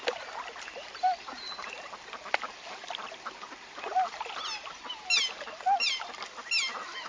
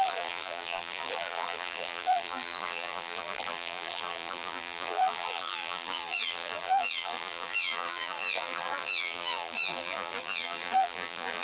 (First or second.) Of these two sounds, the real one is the first